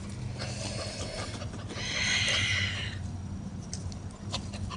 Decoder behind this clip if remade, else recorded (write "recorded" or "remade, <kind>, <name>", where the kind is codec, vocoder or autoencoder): recorded